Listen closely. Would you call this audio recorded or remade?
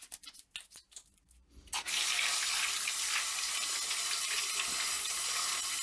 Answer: recorded